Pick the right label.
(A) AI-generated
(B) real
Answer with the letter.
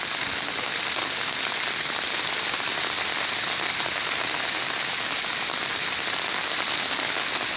B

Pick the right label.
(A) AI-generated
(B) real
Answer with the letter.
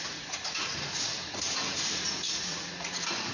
A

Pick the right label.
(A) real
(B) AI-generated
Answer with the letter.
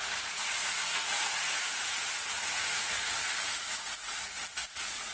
B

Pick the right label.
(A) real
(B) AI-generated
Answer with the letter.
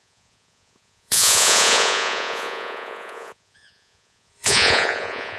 B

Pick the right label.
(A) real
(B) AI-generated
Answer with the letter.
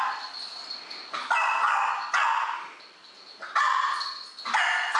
A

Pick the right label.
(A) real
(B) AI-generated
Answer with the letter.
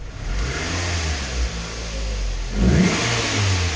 A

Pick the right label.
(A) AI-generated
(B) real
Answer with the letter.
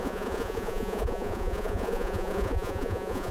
A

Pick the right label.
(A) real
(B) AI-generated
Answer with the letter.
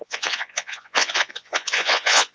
B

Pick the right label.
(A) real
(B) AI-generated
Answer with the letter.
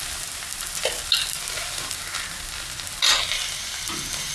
A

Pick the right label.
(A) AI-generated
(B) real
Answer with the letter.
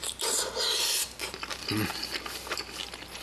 B